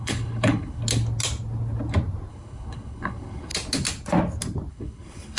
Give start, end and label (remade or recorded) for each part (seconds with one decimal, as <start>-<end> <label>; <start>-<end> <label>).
0.0-0.8 remade; 0.8-2.3 recorded; 2.3-3.5 remade; 3.5-4.7 recorded; 4.7-5.4 remade